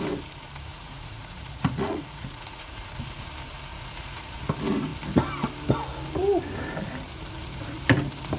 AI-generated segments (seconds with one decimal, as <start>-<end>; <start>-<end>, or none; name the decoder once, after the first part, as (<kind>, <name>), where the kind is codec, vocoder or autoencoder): 0.7-3.0 (vocoder, Vocos); 3.7-4.4